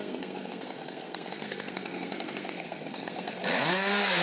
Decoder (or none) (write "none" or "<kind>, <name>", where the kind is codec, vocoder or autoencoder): codec, SNAC